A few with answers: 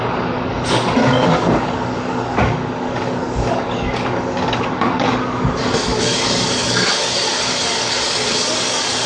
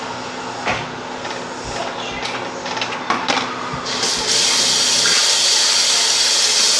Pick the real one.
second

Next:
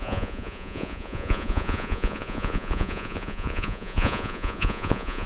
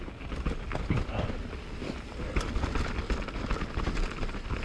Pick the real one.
second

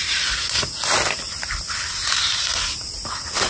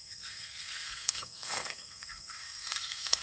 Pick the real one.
first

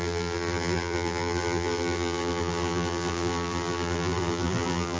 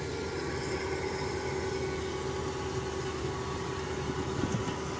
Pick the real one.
second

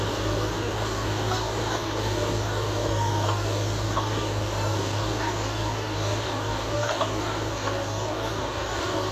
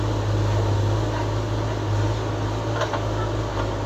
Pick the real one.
second